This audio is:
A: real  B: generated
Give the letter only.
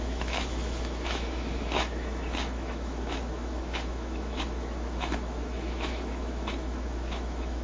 B